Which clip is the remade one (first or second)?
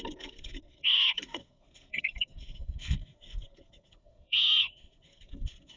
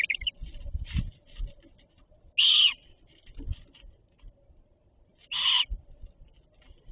first